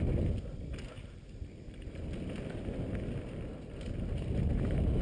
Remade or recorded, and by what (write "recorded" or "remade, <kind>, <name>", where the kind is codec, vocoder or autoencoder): recorded